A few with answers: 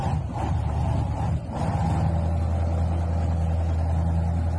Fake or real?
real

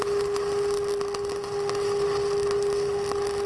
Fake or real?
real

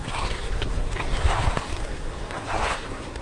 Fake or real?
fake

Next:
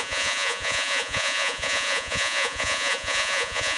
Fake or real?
fake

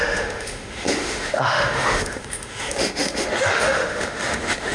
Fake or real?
fake